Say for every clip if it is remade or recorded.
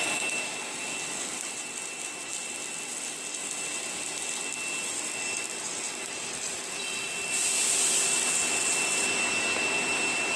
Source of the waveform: recorded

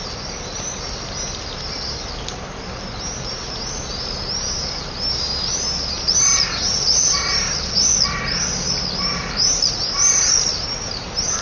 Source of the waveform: recorded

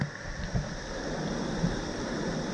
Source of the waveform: recorded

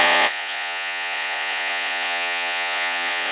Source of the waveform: remade